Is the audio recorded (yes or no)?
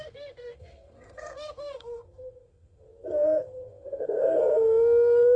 no